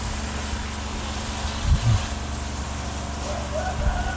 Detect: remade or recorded recorded